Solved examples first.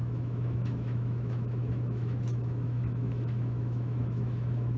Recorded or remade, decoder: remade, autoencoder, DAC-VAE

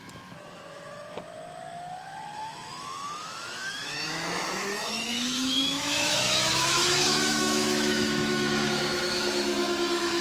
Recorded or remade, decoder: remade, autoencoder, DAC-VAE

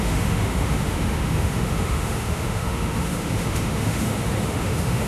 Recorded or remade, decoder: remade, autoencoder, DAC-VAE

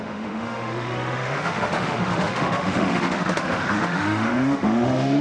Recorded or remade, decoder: remade, autoencoder, DAC-VAE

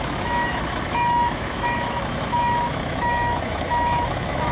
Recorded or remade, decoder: remade, autoencoder, DAC-VAE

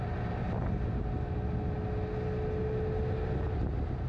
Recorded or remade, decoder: recorded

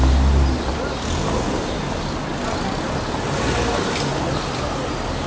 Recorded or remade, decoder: recorded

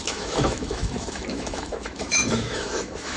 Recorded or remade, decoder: remade, autoencoder, DAC-VAE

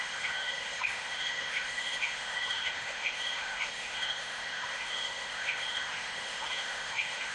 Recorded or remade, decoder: remade, autoencoder, DAC-VAE